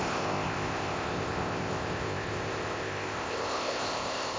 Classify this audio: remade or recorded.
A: remade